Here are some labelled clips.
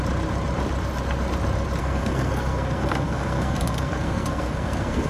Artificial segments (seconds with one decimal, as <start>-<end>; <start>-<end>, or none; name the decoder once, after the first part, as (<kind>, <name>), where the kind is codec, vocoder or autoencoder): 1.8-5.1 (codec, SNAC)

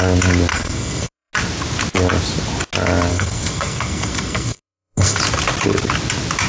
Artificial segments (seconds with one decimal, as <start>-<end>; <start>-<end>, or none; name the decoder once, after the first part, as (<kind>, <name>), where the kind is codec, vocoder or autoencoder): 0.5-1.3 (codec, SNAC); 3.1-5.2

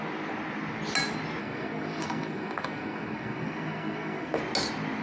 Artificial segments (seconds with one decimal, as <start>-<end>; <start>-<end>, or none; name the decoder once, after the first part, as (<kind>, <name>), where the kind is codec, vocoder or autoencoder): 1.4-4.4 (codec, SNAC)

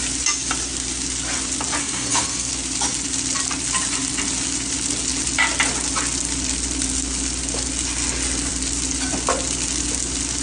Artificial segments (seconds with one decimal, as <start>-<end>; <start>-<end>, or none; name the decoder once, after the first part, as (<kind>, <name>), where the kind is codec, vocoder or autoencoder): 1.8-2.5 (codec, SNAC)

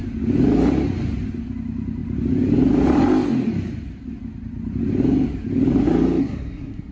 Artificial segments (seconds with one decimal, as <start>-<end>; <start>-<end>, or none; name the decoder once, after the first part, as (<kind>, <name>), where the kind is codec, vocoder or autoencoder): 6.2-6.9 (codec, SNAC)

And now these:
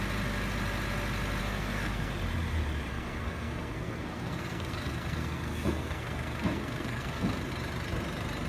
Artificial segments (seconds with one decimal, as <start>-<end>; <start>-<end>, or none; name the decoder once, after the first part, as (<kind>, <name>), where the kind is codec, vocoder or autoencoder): 1.4-2.1 (codec, SNAC); 2.9-7.5

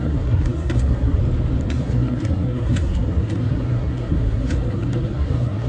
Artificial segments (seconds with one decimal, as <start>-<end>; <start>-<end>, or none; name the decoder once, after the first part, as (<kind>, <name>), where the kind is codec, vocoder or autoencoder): 0.0-1.2 (codec, SNAC); 1.7-5.7